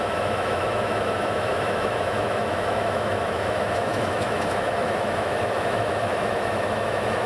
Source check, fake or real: fake